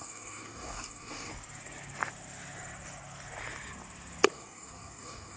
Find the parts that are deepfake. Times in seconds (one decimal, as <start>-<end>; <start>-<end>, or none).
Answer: 0.0-1.3; 4.3-5.4